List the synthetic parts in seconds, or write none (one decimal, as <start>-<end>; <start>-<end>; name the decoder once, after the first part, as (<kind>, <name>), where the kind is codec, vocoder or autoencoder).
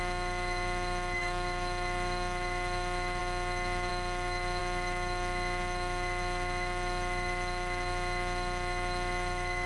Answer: 0.0-9.7 (autoencoder, DAC-VAE)